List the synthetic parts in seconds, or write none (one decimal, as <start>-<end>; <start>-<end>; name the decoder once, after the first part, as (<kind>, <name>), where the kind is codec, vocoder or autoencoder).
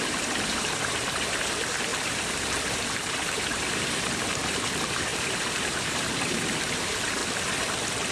0.0-7.2 (vocoder, BigVGAN v2)